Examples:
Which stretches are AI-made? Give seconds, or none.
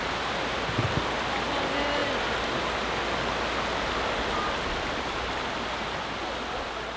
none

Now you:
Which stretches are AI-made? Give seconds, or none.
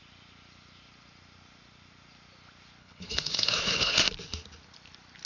2.8-4.0 (codec, HILCodec)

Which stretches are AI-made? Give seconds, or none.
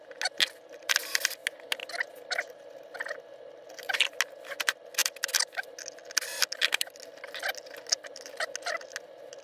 none